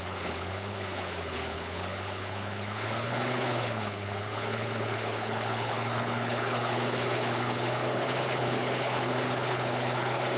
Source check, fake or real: fake